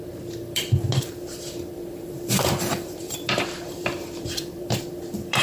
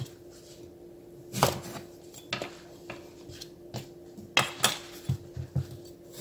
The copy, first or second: first